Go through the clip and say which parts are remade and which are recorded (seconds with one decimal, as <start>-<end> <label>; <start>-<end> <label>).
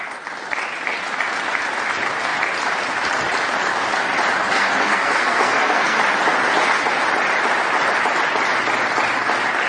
0.0-4.5 recorded; 4.5-6.0 remade; 6.0-9.7 recorded